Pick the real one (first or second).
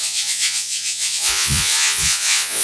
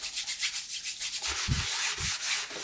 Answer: second